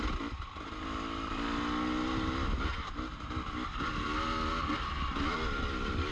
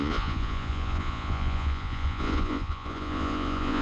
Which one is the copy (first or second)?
second